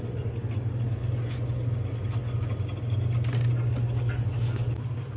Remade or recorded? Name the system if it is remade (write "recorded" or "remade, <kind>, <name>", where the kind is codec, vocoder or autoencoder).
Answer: recorded